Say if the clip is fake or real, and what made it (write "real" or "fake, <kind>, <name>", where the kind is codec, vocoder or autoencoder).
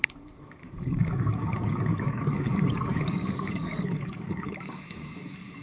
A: fake, codec, DAC